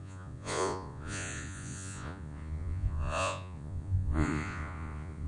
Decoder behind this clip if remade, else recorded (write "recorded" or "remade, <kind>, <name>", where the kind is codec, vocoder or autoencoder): remade, vocoder, Vocos